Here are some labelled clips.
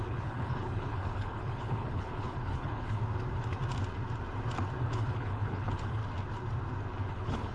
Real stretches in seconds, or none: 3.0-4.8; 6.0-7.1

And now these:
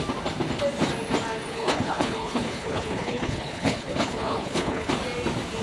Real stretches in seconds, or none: 0.0-1.5; 4.9-5.6

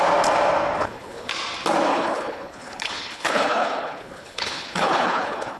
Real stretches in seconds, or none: 0.0-0.8; 1.3-1.9

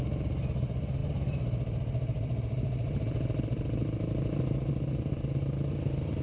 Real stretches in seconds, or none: 0.0-6.2

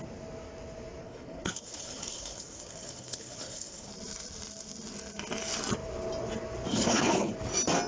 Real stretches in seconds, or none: 0.0-1.0; 3.9-6.7; 7.3-7.9

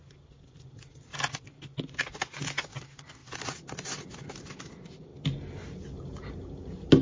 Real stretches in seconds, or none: 0.0-7.0

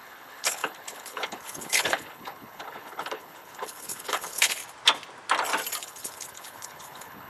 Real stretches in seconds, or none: 4.6-5.8